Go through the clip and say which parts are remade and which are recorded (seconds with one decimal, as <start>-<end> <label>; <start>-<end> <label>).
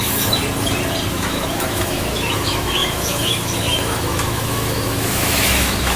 0.0-0.4 remade; 0.4-1.1 recorded; 1.1-6.0 remade